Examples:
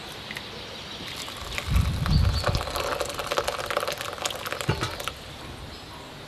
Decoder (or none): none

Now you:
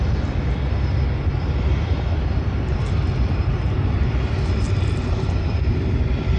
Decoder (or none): none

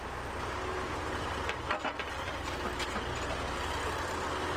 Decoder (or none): none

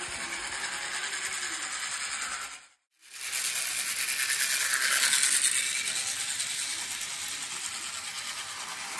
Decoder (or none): none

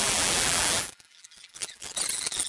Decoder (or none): vocoder, BigVGAN v2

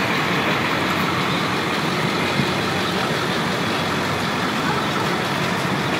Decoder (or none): none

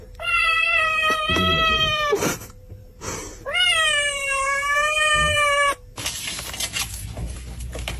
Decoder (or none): vocoder, BigVGAN v2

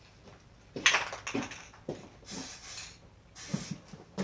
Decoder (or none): none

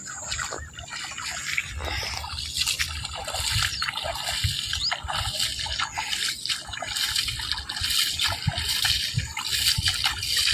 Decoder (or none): none